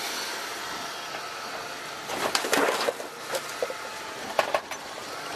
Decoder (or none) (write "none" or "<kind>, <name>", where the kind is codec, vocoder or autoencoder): none